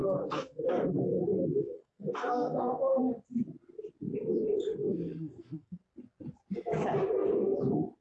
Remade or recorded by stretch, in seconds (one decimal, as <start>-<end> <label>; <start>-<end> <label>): 0.0-1.2 remade; 1.2-1.6 recorded; 1.6-3.0 remade; 3.0-4.7 recorded; 4.7-5.8 remade; 5.8-8.0 recorded